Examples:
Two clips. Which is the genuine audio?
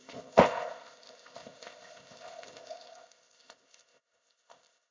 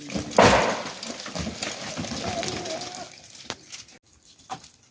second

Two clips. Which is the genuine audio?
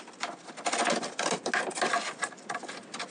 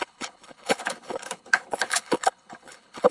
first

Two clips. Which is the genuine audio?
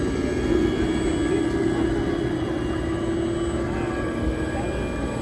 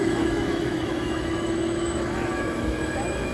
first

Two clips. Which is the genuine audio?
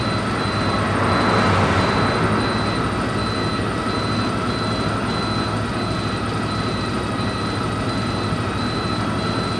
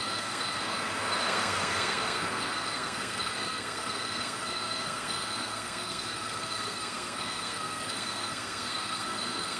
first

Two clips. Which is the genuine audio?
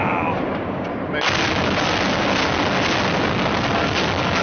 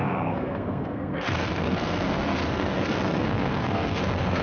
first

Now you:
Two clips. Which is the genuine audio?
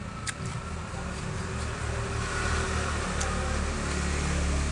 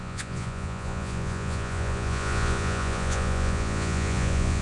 first